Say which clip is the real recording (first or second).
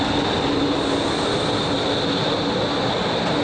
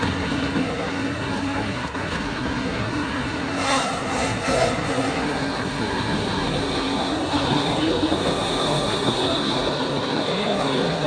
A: first